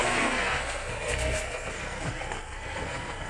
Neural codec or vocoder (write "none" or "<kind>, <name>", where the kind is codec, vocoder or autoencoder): codec, SNAC